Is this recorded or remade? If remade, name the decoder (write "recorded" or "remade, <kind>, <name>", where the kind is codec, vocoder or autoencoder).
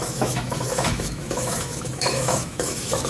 remade, autoencoder, DAC-VAE